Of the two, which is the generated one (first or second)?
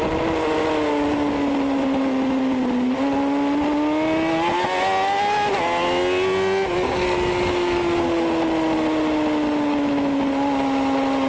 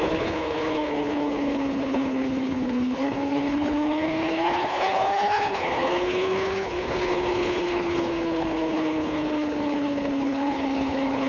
second